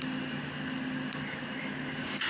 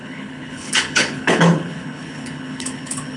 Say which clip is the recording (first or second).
first